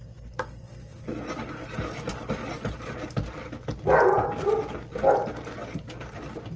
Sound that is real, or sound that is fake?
real